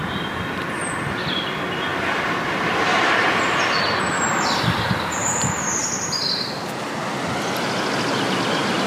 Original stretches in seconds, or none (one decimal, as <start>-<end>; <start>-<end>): 0.0-5.2; 5.8-8.9